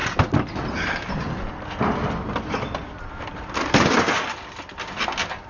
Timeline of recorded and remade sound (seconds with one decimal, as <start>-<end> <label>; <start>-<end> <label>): 0.0-5.5 recorded